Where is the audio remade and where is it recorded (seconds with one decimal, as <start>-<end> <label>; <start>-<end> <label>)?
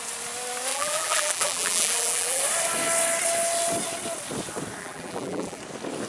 0.0-0.7 recorded; 0.7-2.4 remade; 2.4-4.8 recorded; 4.8-5.6 remade; 5.6-6.1 recorded